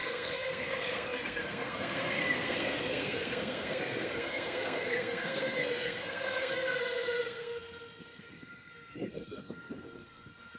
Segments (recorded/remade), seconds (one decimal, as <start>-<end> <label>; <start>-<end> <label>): 0.0-10.6 remade